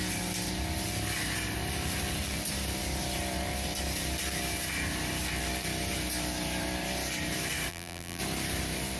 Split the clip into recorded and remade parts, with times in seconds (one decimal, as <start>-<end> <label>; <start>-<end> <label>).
0.0-7.7 recorded; 7.7-8.2 remade; 8.2-9.0 recorded